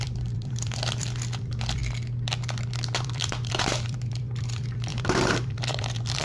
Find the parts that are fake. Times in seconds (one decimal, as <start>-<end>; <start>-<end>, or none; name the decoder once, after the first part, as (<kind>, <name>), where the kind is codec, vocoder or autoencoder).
0.0-1.8 (vocoder, BigVGAN v2); 3.0-6.2